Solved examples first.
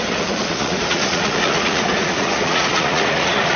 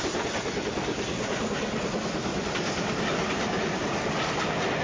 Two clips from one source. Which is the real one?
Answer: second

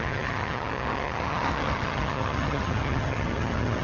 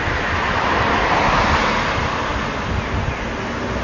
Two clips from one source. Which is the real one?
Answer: second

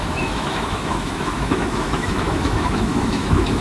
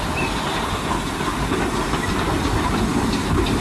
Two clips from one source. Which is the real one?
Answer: second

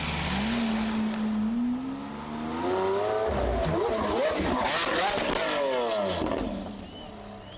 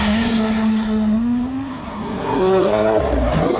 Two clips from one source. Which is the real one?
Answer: first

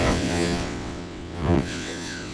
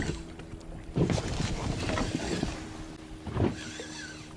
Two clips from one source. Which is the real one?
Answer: second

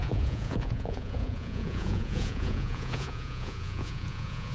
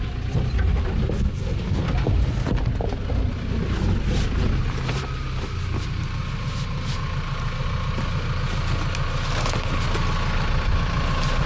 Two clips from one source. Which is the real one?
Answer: second